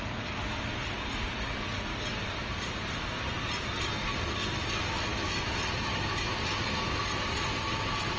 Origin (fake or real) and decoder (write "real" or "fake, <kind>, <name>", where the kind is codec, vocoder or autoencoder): real